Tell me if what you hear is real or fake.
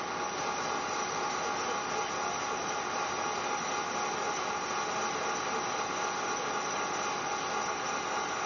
real